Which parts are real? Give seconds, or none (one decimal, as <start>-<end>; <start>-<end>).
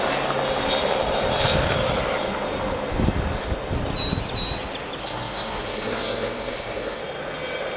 0.0-5.0; 7.0-7.8